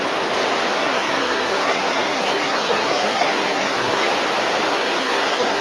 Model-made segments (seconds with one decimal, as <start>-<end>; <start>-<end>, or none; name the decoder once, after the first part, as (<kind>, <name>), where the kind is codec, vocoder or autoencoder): 0.7-4.1 (codec, SNAC); 4.7-5.6